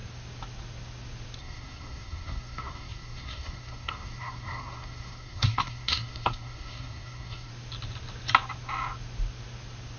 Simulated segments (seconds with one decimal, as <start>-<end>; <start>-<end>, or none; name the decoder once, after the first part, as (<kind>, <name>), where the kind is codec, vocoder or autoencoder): 1.4-7.5 (codec, SNAC)